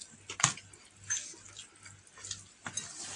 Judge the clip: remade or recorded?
recorded